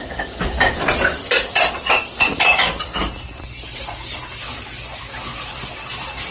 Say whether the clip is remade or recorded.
recorded